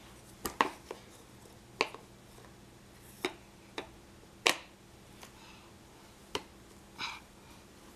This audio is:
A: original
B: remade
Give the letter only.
A